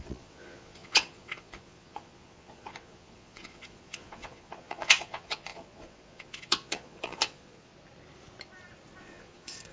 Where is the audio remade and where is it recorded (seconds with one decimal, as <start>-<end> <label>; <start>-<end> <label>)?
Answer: 0.0-7.7 remade; 7.7-9.0 recorded; 9.0-9.7 remade